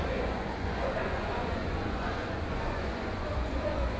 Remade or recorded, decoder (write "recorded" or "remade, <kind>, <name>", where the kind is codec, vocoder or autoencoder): remade, vocoder, Vocos